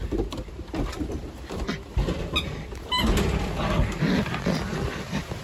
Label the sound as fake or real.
real